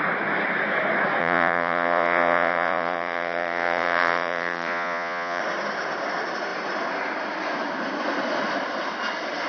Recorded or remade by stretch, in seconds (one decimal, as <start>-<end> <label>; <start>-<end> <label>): 0.0-1.2 recorded; 1.2-5.4 remade; 5.4-9.5 recorded